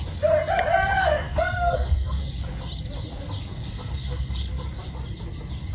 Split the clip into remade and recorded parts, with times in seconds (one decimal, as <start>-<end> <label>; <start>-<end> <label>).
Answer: 0.0-1.0 recorded; 1.0-2.2 remade; 2.2-3.5 recorded; 3.5-4.5 remade; 4.5-5.7 recorded